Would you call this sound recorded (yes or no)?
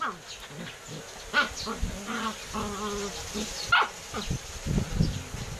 yes